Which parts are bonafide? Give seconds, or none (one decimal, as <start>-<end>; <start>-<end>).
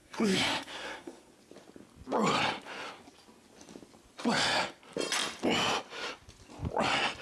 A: 1.3-7.2